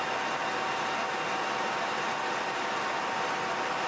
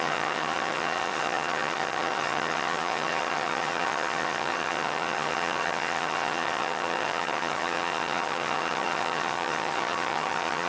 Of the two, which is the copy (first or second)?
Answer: second